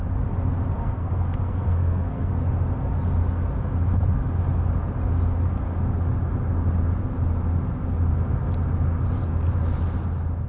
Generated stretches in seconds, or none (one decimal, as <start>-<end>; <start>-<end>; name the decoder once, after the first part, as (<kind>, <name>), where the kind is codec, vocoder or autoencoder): 0.8-2.3 (codec, SNAC)